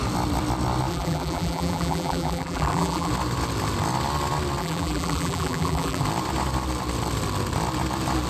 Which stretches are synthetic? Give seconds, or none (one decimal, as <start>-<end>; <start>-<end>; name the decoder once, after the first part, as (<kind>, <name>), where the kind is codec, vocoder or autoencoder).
0.9-3.1 (vocoder, BigVGAN v2); 4.6-6.0